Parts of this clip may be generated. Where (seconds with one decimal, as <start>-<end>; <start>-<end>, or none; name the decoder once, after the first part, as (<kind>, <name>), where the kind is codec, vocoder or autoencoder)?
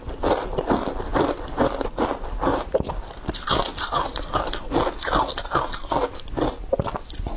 none